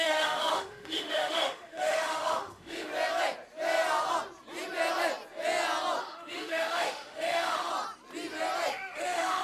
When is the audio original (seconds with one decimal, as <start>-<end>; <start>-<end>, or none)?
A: 2.9-6.0; 7.7-8.7